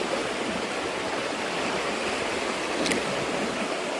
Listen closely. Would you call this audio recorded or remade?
recorded